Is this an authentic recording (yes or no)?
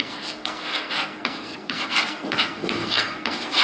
no